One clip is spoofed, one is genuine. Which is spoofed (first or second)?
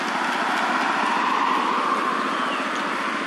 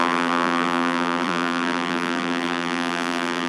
second